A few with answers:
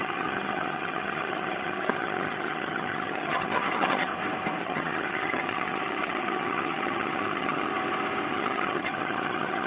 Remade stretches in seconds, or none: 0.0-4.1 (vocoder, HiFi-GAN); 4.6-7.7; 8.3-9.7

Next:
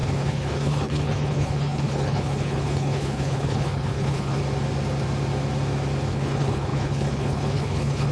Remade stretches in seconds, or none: 0.0-4.4 (codec, HILCodec); 6.1-8.1

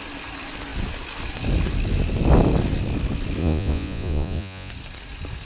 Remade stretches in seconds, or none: 3.4-4.7 (vocoder, Vocos)

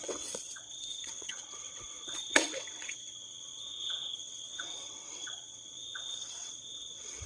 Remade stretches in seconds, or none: 0.0-7.3 (vocoder, WaveNeXt)